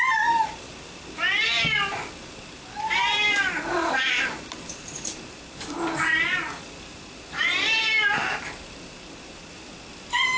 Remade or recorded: remade